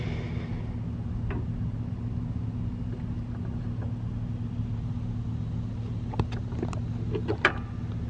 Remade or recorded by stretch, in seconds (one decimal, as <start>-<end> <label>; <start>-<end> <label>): 0.0-8.1 recorded